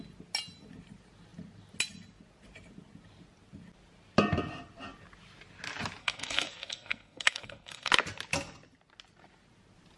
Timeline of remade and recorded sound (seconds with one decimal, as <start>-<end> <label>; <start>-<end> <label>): 0.0-6.0 recorded; 6.0-7.9 remade; 7.9-10.0 recorded